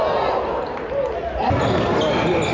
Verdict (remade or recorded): recorded